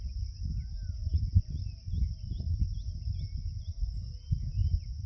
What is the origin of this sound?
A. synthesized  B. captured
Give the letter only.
B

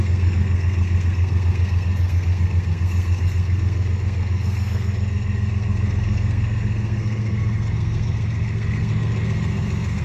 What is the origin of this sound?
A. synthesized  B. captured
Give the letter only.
A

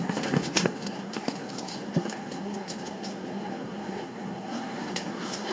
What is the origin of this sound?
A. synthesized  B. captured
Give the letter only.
A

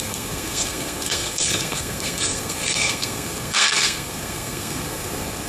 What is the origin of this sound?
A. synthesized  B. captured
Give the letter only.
A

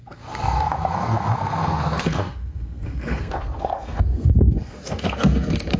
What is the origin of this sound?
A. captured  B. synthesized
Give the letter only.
B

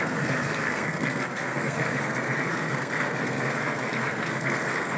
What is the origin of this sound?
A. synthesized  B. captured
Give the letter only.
A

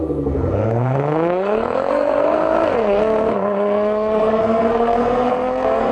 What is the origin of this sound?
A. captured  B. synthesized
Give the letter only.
B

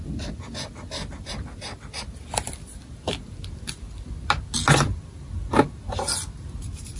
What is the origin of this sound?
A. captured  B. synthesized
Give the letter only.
A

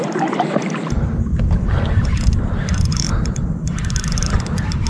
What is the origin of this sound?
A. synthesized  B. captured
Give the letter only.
B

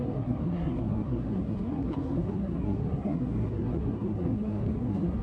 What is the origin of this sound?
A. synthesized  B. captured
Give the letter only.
A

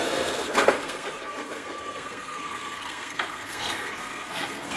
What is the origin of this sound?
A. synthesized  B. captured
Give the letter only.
A